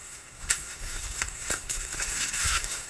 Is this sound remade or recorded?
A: remade